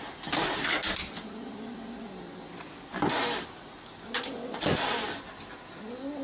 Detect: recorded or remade recorded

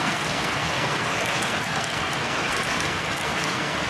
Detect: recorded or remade remade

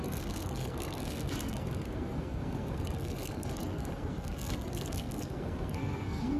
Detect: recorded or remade remade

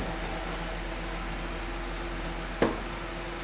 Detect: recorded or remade recorded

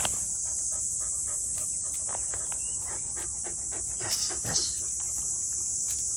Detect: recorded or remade recorded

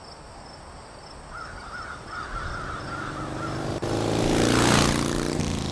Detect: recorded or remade recorded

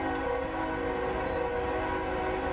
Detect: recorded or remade recorded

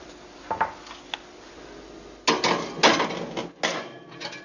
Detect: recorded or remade recorded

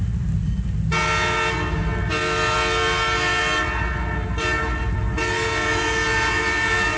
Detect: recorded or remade recorded